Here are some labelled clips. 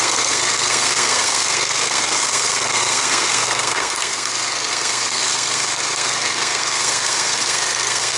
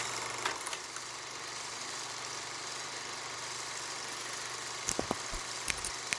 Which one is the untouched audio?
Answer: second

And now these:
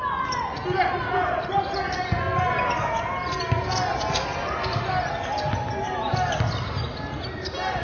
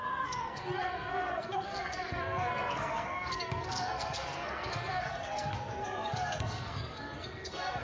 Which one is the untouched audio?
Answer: first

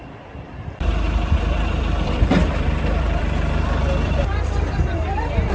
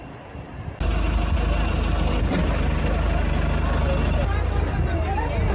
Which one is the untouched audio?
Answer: second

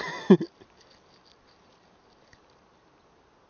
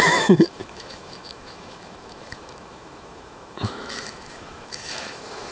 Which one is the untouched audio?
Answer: first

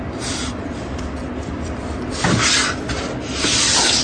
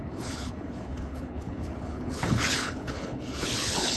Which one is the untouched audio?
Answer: first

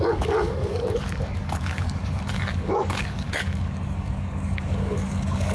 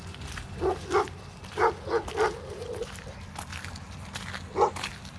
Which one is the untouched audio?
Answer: second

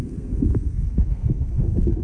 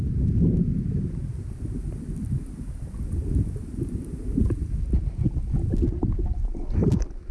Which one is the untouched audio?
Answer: second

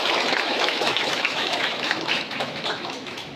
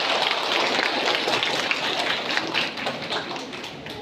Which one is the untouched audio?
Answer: second